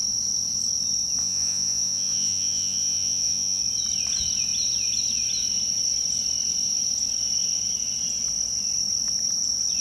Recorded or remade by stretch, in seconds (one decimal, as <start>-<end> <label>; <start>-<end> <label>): 0.0-1.2 recorded; 1.2-3.6 remade; 3.6-9.8 recorded